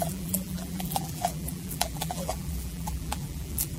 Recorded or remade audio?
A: remade